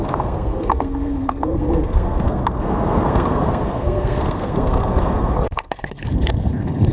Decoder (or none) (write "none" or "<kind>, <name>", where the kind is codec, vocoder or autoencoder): codec, SNAC